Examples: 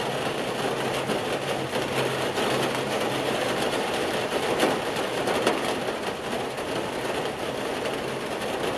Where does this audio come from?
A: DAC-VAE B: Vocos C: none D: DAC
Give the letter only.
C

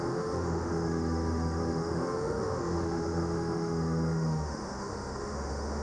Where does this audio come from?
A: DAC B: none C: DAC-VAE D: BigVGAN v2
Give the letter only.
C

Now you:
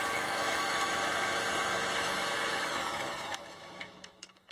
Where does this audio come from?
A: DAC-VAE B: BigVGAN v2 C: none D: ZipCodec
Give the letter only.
A